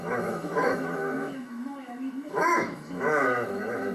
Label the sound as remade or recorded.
remade